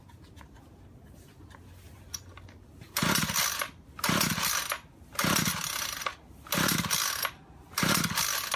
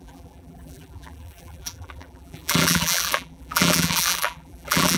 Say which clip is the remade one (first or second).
second